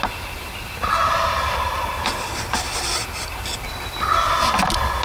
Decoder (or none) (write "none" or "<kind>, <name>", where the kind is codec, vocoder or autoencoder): none